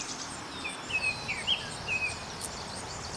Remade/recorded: remade